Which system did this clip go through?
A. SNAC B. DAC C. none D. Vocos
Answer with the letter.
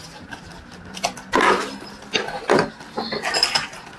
C